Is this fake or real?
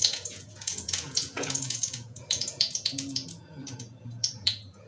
fake